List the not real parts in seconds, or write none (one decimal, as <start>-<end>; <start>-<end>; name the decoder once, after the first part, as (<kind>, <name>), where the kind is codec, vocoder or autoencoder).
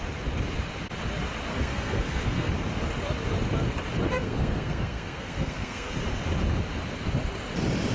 1.5-2.5 (codec, SNAC); 4.2-5.9